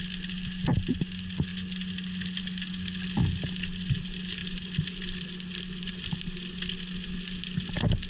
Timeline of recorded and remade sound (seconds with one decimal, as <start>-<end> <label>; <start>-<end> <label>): 0.0-8.1 recorded